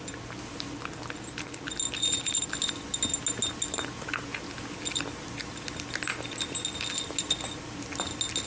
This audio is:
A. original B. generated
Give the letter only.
A